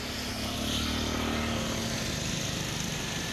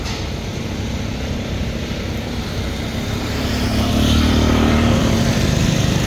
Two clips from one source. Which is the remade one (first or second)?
second